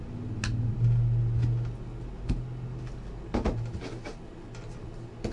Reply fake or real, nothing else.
real